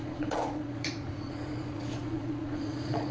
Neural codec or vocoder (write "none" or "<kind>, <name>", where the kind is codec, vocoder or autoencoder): vocoder, Vocos